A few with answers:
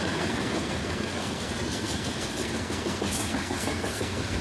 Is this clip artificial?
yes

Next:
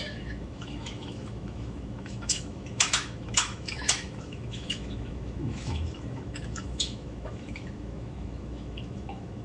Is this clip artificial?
yes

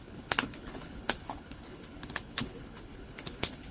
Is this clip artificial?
yes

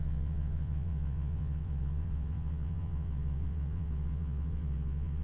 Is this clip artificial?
yes